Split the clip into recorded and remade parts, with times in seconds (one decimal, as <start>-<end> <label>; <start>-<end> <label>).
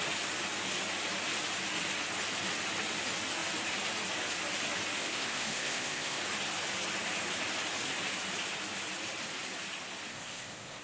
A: 0.0-5.0 recorded; 5.0-6.2 remade; 6.2-10.1 recorded; 10.1-10.8 remade